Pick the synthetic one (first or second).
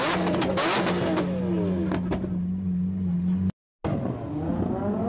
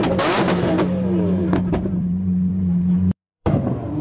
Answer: second